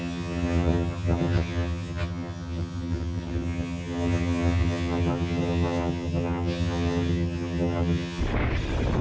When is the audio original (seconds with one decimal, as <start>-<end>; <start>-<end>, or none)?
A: 8.2-9.0